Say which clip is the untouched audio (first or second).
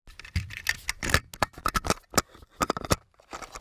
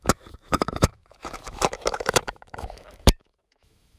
first